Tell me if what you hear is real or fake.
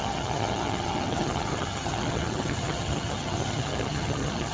fake